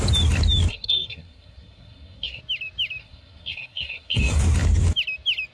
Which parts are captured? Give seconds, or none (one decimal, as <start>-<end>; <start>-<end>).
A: 0.0-0.7; 2.4-3.0; 4.4-5.5